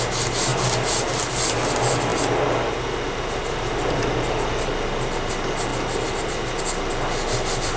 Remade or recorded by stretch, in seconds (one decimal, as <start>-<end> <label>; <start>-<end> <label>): 0.0-7.8 recorded